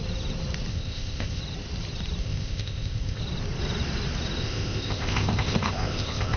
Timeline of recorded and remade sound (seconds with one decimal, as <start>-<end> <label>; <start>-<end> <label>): 0.0-0.7 recorded; 0.7-1.4 remade; 1.4-2.2 recorded; 2.2-3.2 remade; 3.2-4.4 recorded; 4.4-6.4 remade